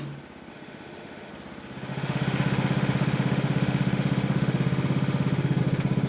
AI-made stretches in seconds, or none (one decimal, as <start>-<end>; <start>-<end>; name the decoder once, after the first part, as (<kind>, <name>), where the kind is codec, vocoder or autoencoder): 0.5-1.3 (autoencoder, DAC-VAE); 1.9-5.6